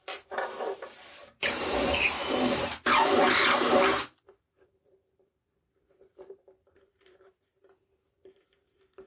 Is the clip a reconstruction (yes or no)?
yes